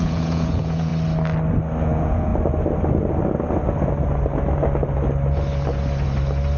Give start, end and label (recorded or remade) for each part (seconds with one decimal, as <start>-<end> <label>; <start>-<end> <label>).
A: 0.0-0.9 remade; 0.9-1.8 recorded; 1.8-2.3 remade; 2.3-6.6 recorded